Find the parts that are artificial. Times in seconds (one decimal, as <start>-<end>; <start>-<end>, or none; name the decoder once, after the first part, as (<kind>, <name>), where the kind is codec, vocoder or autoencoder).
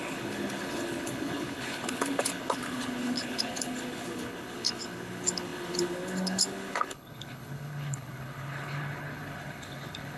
0.0-10.2 (codec, HILCodec)